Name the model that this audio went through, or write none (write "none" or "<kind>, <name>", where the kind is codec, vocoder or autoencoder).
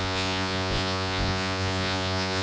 vocoder, Vocos